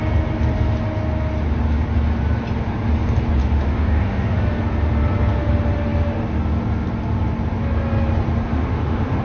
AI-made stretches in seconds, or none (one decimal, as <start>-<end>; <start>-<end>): 3.4-4.4; 8.5-9.2